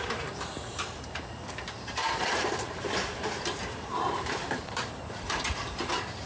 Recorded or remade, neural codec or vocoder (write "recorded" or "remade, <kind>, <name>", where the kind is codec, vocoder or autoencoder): remade, vocoder, BigVGAN v2